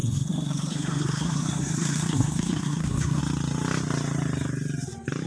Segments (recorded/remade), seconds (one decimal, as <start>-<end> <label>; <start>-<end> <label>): 0.0-3.2 remade; 3.2-5.3 recorded